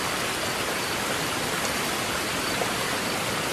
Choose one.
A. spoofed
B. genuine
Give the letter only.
B